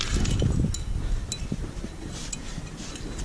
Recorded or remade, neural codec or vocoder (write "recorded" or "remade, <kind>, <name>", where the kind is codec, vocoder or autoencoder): recorded